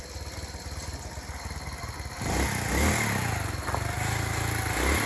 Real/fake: real